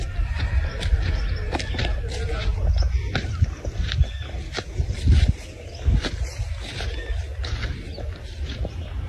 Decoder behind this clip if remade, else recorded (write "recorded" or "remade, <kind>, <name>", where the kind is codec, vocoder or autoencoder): recorded